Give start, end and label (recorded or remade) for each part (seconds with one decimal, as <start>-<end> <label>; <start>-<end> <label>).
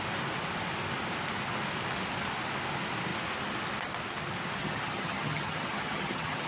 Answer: 0.0-4.6 recorded; 4.6-6.5 remade